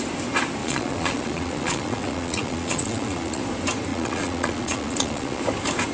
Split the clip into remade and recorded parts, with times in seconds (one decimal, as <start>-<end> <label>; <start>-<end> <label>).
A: 0.0-0.6 recorded; 0.6-3.4 remade; 3.4-3.9 recorded; 3.9-5.4 remade; 5.4-5.9 recorded

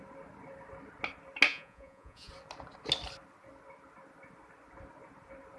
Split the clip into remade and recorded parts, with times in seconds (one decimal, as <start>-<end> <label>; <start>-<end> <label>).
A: 0.0-1.5 recorded; 1.5-2.3 remade; 2.3-5.6 recorded